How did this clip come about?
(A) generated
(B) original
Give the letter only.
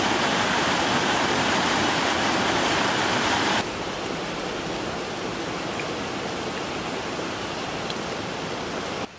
B